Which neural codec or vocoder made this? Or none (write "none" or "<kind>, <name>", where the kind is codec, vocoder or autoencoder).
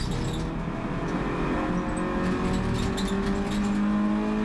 none